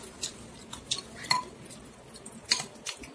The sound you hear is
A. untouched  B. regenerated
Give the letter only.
A